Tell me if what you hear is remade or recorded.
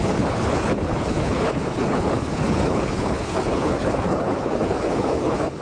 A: remade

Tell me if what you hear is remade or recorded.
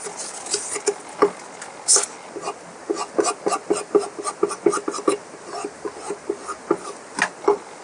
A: recorded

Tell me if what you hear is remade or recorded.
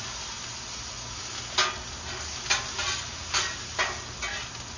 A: recorded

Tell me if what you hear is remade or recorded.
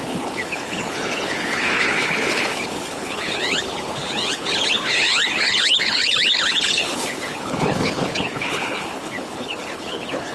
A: remade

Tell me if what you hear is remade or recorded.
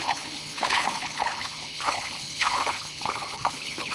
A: remade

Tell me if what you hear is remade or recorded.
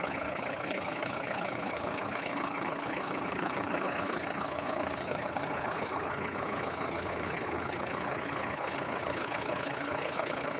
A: remade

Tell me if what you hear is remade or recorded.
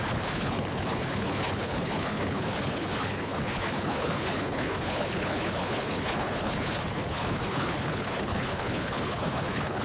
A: remade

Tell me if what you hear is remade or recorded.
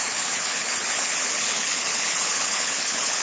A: remade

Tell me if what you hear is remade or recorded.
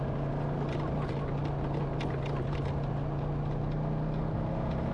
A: recorded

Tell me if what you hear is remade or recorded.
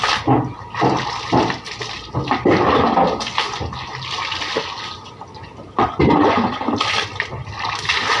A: recorded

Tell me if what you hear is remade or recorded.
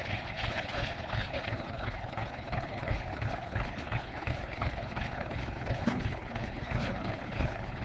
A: remade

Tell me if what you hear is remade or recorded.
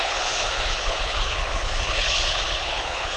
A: remade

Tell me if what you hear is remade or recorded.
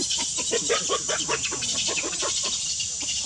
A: recorded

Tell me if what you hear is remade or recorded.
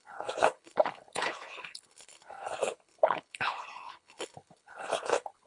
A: remade